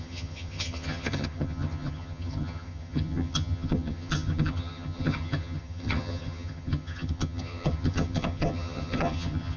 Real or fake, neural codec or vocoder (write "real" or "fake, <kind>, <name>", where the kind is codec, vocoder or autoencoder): fake, vocoder, HiFi-GAN